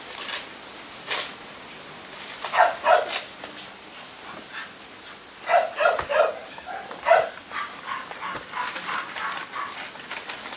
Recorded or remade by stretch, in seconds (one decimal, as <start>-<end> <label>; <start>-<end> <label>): 0.0-6.4 recorded; 6.4-7.6 remade; 7.6-10.6 recorded